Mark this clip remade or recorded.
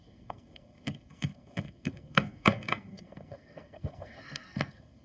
remade